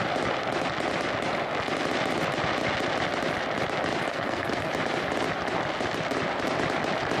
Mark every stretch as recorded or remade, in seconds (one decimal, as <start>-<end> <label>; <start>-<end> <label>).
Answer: 0.0-4.1 recorded; 4.1-4.7 remade; 4.7-7.2 recorded